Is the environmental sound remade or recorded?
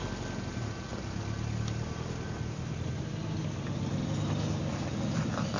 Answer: recorded